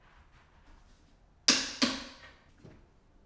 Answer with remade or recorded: recorded